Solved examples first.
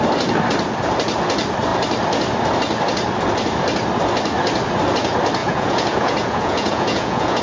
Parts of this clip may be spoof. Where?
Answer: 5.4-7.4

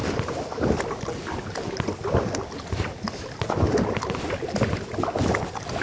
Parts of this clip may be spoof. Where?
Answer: none

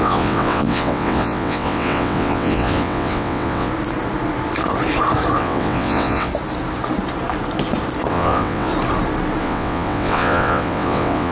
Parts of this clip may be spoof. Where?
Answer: 0.0-3.7; 5.4-6.3; 8.1-8.7; 9.4-11.3

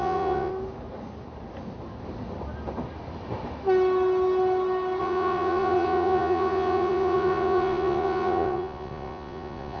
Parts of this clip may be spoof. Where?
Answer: 0.0-0.5; 5.0-9.8